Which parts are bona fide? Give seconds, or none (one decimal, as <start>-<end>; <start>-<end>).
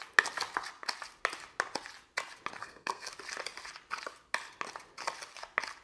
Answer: 0.0-2.6; 3.1-5.8